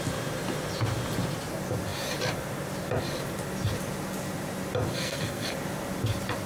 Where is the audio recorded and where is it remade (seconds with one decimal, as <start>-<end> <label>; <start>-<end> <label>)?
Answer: 0.0-4.9 recorded; 4.9-5.5 remade; 5.5-6.5 recorded